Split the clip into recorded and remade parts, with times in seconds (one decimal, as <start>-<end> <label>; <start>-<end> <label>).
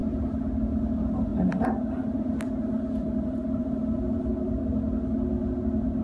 0.0-1.3 recorded; 1.3-4.6 remade; 4.6-6.0 recorded